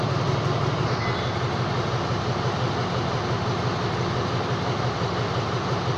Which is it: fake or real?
real